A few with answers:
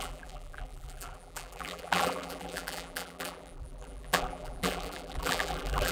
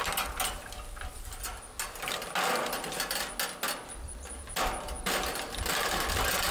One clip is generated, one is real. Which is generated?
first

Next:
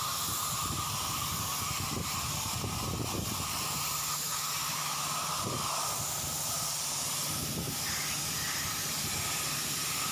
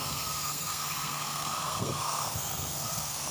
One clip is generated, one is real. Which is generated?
second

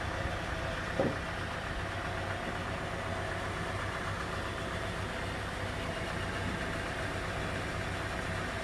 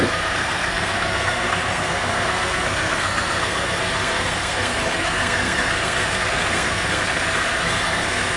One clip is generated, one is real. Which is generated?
second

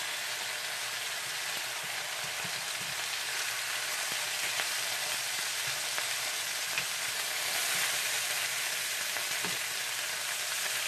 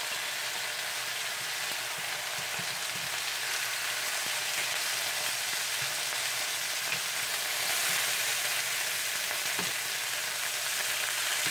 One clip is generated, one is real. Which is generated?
first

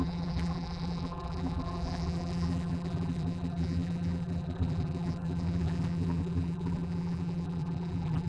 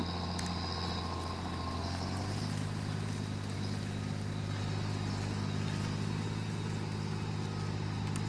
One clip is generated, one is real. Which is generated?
first